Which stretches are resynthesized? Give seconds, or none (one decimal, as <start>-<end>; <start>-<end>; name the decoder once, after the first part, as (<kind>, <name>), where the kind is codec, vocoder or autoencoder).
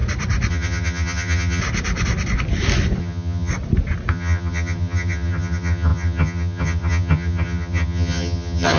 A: 0.5-1.6 (vocoder, HiFi-GAN); 3.0-3.5; 4.1-8.8